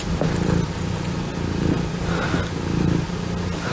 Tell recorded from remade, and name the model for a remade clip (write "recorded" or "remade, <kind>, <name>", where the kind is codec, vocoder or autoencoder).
recorded